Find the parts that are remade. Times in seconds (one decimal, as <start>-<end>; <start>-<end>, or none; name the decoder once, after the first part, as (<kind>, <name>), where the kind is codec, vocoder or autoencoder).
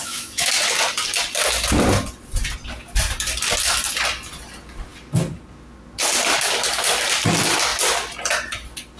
0.0-0.5 (autoencoder, DAC-VAE)